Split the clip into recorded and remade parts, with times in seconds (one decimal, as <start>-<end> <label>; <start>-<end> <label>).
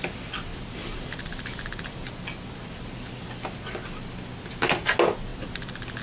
0.0-0.5 recorded; 0.5-2.1 remade; 2.1-5.3 recorded; 5.3-6.0 remade